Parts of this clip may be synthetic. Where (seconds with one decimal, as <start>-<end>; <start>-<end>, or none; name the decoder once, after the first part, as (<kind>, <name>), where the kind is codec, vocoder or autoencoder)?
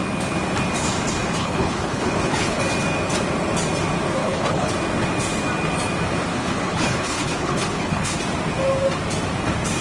1.4-2.6 (codec, HILCodec); 4.2-4.7; 6.3-8.2